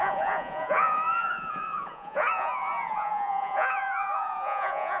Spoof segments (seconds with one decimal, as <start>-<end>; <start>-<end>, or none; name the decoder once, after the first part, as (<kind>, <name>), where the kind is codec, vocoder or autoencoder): 0.0-5.0 (vocoder, Vocos)